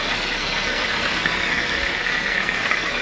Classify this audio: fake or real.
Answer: fake